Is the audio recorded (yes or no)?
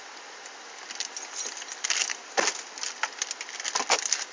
yes